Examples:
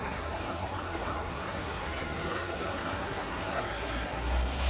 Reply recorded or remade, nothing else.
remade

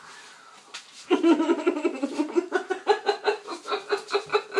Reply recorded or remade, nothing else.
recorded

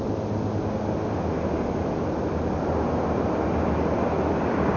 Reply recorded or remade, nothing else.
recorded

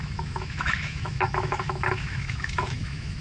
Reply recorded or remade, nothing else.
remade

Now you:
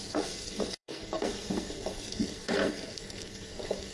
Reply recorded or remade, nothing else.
remade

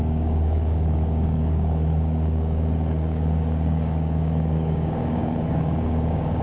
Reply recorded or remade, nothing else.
remade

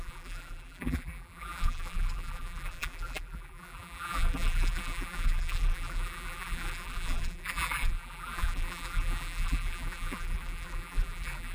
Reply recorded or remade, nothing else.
remade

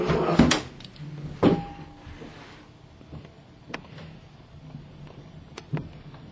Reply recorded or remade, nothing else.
recorded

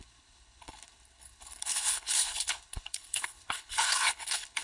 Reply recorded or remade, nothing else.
remade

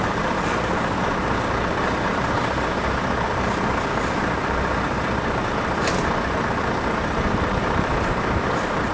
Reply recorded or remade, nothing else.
remade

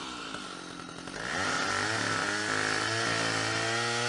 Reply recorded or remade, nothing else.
recorded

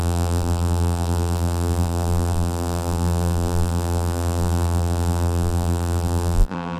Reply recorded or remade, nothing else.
remade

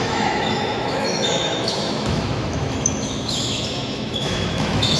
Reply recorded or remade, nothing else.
remade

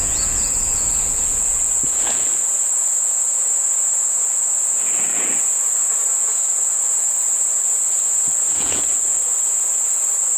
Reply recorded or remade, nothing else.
remade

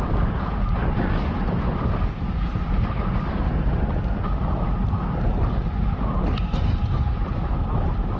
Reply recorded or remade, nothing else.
recorded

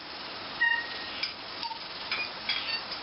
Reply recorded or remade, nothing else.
recorded